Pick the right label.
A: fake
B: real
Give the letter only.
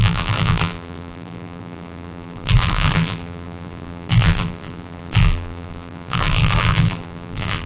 A